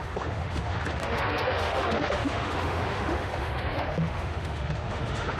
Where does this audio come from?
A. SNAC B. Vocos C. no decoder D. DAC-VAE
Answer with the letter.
D